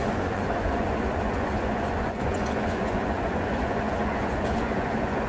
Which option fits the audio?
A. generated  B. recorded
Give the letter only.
A